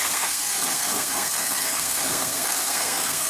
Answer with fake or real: fake